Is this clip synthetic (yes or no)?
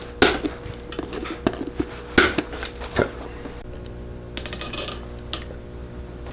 no